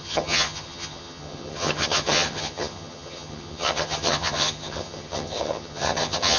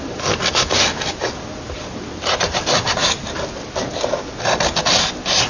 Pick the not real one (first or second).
first